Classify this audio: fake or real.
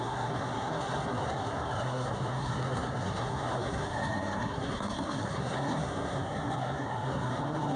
fake